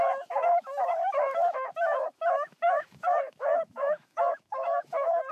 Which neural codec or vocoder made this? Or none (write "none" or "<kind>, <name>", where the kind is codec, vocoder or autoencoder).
autoencoder, DAC-VAE